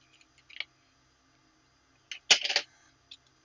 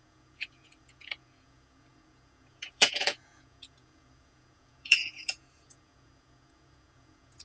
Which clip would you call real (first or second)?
first